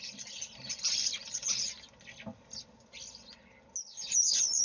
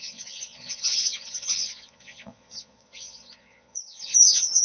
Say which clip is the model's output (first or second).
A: second